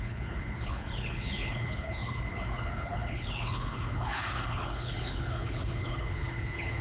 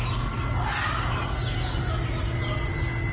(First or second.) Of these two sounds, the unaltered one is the second